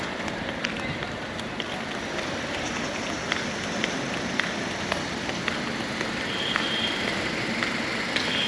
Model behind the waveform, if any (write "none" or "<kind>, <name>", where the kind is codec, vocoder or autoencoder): none